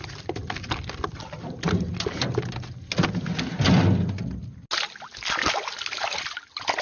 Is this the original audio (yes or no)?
yes